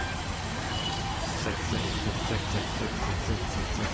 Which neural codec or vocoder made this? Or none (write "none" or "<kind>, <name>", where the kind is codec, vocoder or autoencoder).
none